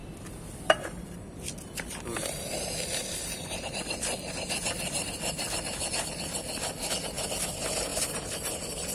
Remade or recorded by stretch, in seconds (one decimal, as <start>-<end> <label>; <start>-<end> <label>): 0.0-8.9 remade